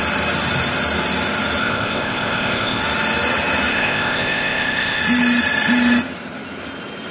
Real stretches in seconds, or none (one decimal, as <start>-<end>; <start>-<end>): 0.0-1.6; 2.8-3.7; 5.0-7.1